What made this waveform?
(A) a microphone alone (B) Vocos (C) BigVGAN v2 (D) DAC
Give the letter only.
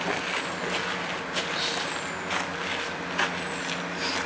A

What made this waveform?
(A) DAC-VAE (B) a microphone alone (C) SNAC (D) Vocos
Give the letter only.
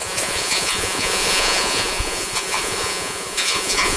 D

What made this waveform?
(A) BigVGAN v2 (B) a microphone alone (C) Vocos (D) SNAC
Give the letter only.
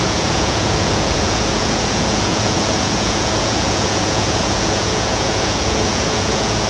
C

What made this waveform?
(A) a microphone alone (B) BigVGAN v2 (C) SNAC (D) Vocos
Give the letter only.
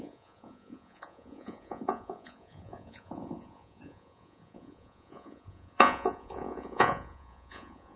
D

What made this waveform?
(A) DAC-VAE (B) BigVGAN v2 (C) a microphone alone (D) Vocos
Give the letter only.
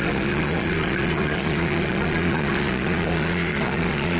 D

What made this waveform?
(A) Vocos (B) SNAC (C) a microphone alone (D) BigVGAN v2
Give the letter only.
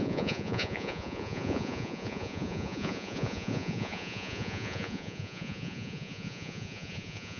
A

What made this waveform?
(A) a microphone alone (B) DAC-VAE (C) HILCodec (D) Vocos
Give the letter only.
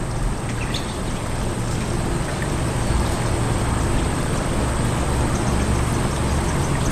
A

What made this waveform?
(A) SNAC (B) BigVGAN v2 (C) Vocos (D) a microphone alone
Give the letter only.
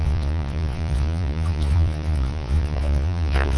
C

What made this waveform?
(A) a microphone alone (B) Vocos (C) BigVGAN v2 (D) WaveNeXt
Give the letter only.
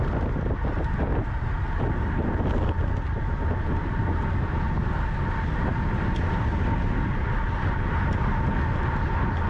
A